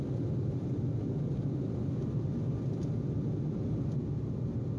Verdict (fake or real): real